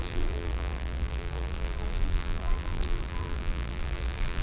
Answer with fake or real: fake